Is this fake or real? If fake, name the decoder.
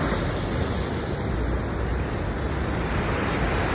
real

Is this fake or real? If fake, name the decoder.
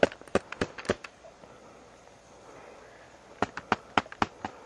real